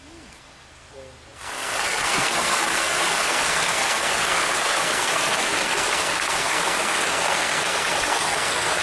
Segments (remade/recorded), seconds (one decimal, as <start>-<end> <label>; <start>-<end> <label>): 0.0-8.8 remade